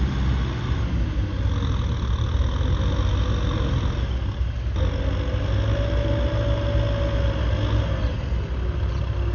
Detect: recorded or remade recorded